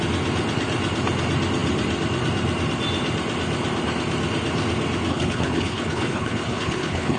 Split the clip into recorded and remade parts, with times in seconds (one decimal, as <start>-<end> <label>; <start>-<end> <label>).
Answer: 0.0-5.1 recorded; 5.1-7.2 remade